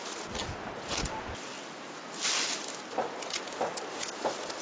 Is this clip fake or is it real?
real